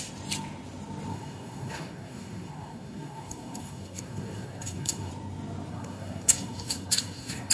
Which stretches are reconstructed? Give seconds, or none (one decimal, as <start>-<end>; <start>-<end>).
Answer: 1.1-5.1; 5.7-7.5